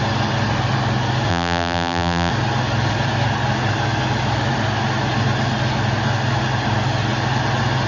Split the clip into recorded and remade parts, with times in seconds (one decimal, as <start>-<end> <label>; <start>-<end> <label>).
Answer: 0.0-1.3 recorded; 1.3-2.3 remade; 2.3-7.9 recorded